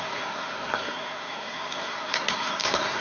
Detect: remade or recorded remade